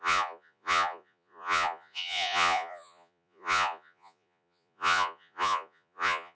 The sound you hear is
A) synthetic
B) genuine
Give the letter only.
A